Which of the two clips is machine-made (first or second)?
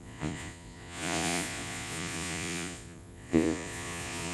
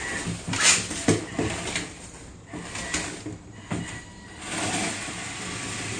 first